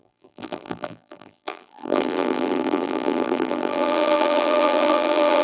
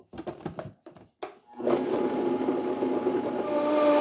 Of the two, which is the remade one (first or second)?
first